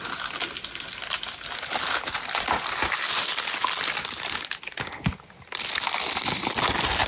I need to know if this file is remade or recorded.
recorded